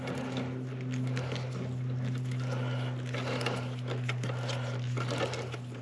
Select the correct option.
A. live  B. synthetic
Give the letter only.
A